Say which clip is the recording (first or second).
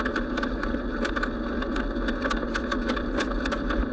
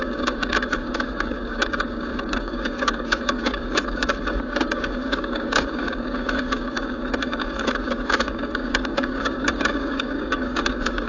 first